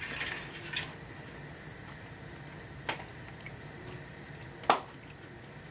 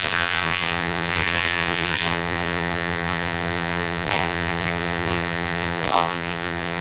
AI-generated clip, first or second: second